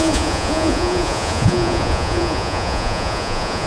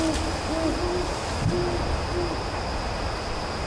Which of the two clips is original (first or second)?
second